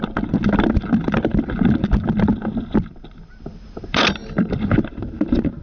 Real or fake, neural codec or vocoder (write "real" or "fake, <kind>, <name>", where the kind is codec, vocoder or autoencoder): fake, vocoder, BigVGAN v2